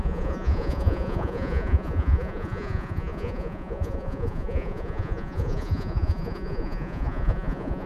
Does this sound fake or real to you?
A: fake